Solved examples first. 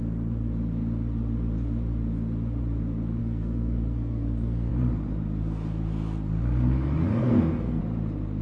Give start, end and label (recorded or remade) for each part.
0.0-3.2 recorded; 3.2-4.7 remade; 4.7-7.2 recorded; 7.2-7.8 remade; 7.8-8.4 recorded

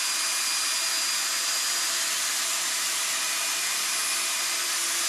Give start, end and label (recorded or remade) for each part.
0.0-5.1 recorded

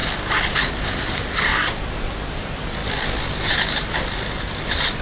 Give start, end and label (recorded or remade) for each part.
0.0-0.6 recorded; 0.6-1.5 remade; 1.5-2.3 recorded; 2.3-2.8 remade; 2.8-3.3 recorded; 3.3-5.0 remade

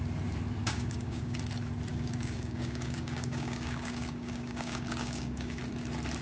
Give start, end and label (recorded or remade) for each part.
0.0-0.6 recorded; 0.6-1.4 remade; 1.4-1.9 recorded; 1.9-5.6 remade; 5.6-6.2 recorded